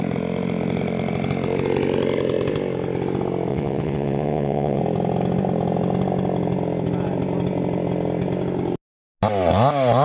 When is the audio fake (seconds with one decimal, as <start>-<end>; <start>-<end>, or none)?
3.5-4.8

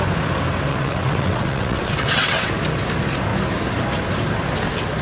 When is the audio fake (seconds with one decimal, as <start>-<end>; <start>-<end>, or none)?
0.7-2.5

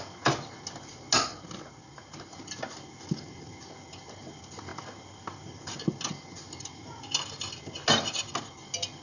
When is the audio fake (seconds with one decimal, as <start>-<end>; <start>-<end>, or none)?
none

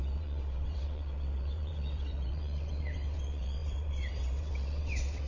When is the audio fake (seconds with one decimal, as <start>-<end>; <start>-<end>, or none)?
0.0-5.3